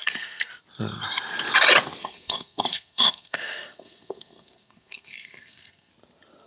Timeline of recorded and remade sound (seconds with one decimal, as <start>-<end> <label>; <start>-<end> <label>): 0.0-0.5 remade; 0.5-2.0 recorded; 2.0-5.9 remade; 5.9-6.5 recorded